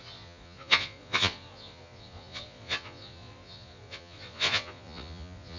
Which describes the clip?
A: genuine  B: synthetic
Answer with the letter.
B